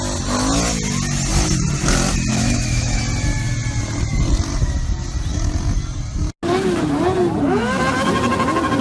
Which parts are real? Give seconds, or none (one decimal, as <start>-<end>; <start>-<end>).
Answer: 0.0-2.3; 3.0-8.8